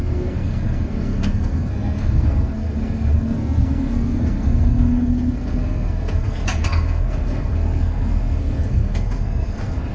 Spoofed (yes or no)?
yes